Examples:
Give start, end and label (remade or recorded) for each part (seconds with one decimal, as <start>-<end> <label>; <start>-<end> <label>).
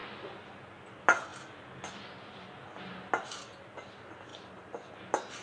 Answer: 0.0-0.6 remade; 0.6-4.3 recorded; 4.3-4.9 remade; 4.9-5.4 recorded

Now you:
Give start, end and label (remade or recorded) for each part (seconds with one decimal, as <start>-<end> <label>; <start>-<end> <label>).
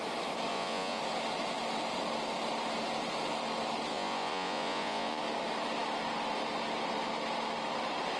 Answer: 0.0-0.5 recorded; 0.5-1.0 remade; 1.0-3.9 recorded; 3.9-5.2 remade; 5.2-8.2 recorded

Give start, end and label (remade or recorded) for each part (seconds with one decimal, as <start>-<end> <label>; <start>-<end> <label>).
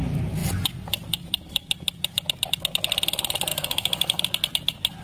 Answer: 0.0-3.5 recorded; 3.5-4.2 remade; 4.2-5.0 recorded